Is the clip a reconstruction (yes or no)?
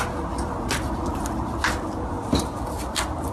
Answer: no